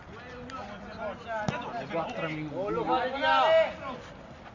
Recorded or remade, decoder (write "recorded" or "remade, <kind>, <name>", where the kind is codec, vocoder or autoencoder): recorded